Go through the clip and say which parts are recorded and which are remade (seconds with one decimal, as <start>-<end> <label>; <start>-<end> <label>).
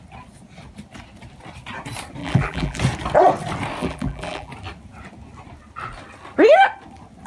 0.0-2.2 recorded; 2.2-2.8 remade; 2.8-3.8 recorded; 3.8-4.5 remade; 4.5-7.3 recorded